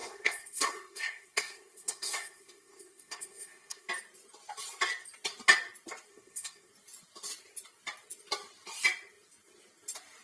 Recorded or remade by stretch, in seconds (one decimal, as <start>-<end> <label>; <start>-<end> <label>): 0.0-3.9 remade; 3.9-6.1 recorded; 6.1-6.7 remade; 6.7-10.2 recorded